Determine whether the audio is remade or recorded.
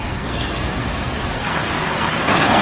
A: remade